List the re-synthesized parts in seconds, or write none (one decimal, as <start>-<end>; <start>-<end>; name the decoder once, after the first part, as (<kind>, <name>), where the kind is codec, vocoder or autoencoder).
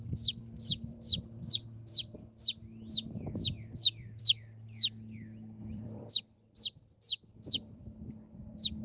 0.4-4.2 (vocoder, BigVGAN v2); 5.6-6.1